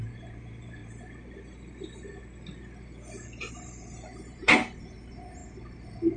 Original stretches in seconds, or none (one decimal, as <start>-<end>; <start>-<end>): 0.8-3.5; 5.4-6.2

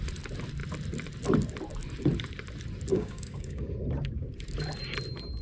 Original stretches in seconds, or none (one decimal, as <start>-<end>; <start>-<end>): 0.0-2.9; 3.7-5.4

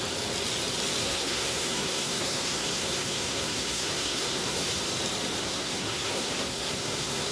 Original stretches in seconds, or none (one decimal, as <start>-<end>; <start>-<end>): 0.0-1.0; 4.8-5.4

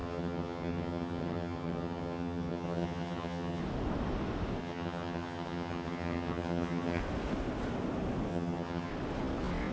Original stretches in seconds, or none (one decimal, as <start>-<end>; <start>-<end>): 3.6-4.6; 7.0-8.3; 8.9-9.7

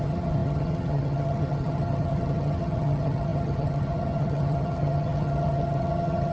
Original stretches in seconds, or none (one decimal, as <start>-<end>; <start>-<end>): none

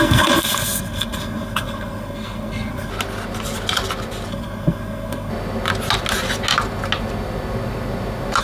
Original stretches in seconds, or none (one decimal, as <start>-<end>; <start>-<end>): 2.9-4.3; 5.3-8.4